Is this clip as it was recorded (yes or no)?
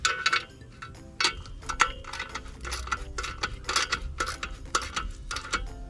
yes